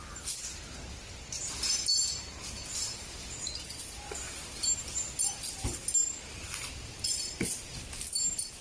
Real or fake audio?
real